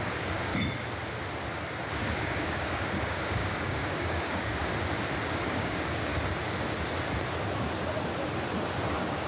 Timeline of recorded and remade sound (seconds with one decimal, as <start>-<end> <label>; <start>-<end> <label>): 0.0-0.5 remade; 0.5-1.9 recorded; 1.9-4.6 remade; 4.6-5.5 recorded; 5.5-6.1 remade; 6.1-8.9 recorded; 8.9-9.3 remade